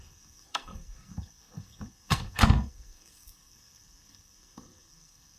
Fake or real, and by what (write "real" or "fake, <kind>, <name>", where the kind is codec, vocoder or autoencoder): fake, codec, SNAC